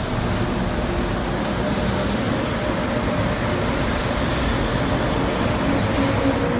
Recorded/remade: recorded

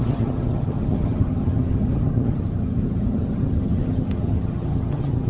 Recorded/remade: remade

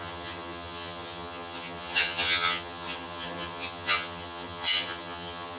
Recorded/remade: remade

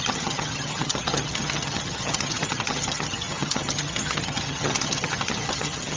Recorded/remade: remade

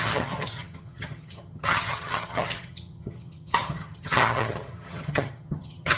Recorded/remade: remade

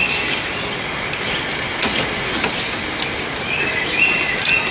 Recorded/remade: recorded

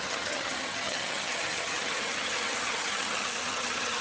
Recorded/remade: remade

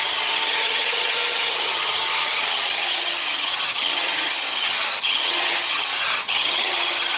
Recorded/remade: remade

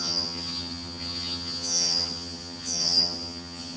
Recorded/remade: remade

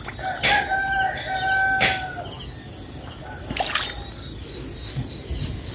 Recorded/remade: recorded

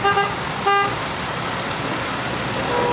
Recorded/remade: recorded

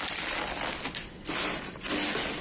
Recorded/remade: recorded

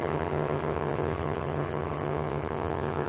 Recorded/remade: remade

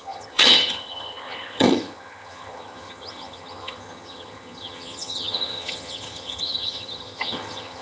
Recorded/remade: remade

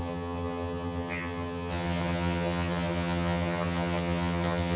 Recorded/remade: remade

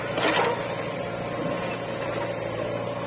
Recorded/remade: recorded